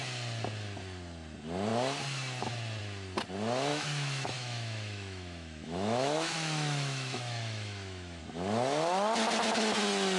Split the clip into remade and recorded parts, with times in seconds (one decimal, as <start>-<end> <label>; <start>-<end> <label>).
0.0-3.7 recorded; 3.7-8.2 remade; 8.2-10.2 recorded